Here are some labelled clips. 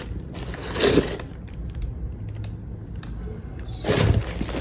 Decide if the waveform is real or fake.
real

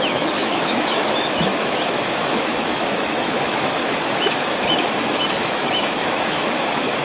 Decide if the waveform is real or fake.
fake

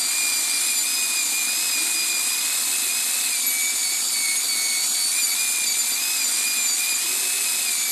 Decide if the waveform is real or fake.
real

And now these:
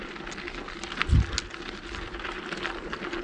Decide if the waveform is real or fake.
real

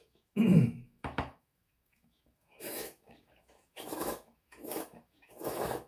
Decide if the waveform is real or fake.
fake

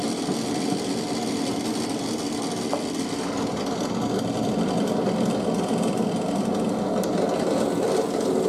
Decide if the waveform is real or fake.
real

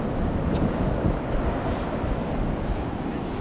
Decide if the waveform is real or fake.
real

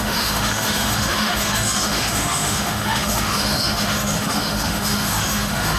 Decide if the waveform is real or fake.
fake